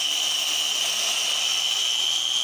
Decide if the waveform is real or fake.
real